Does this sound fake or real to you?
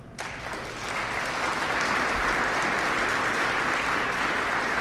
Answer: fake